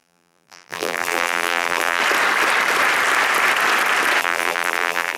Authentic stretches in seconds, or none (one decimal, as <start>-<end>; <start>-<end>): 2.0-4.2